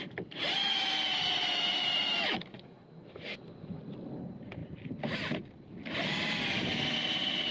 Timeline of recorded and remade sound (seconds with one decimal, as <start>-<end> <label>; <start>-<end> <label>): 0.0-0.6 recorded; 0.6-3.8 remade; 3.8-7.5 recorded